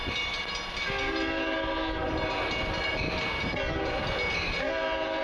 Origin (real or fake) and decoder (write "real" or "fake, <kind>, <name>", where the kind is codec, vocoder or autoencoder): real